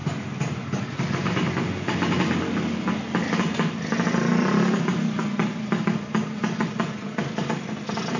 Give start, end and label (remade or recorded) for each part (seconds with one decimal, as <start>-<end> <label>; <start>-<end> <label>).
0.0-8.2 recorded